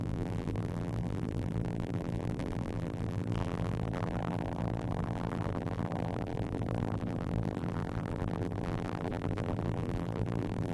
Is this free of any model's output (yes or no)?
no